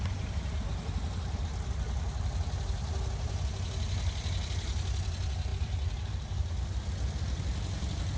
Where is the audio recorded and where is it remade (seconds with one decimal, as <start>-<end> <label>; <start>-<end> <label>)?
0.0-8.2 recorded